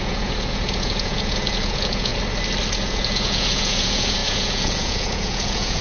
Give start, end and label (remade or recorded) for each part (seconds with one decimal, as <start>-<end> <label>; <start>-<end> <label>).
0.0-2.1 remade; 2.1-2.7 recorded; 2.7-5.8 remade